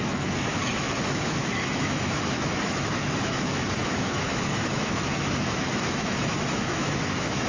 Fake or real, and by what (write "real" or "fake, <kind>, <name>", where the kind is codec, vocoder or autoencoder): fake, autoencoder, DAC-VAE